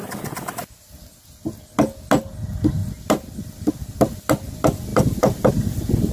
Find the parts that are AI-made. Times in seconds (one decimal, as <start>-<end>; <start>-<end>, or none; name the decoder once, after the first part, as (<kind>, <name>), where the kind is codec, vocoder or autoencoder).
none